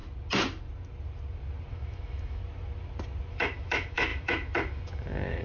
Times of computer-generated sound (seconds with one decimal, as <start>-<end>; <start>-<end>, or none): 1.7-2.4; 3.3-5.4